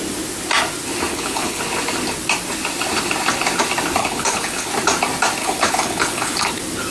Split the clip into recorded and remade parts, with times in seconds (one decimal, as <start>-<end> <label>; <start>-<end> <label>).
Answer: 0.0-1.1 recorded; 1.1-1.6 remade; 1.6-4.0 recorded; 4.0-4.7 remade; 4.7-5.4 recorded; 5.4-6.5 remade; 6.5-6.9 recorded